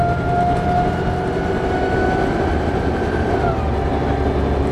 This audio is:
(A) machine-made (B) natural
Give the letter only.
B